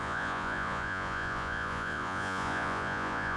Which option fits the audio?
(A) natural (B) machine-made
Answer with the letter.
B